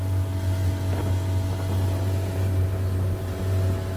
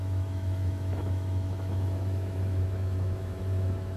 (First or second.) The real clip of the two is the first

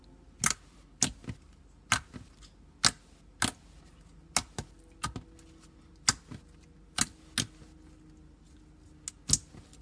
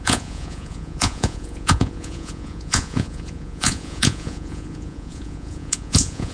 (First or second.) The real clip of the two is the first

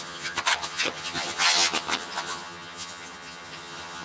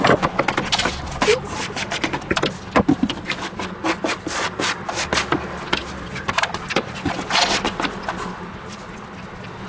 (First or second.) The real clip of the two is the second